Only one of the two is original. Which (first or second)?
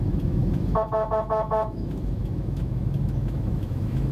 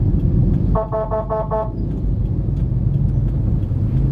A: second